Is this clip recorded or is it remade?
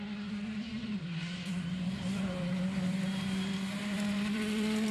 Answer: remade